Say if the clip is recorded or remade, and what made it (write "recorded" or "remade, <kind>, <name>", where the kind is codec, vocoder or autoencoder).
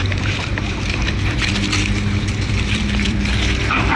remade, vocoder, BigVGAN v2